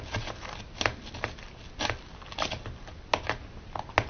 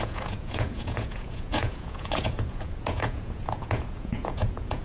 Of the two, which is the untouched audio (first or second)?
first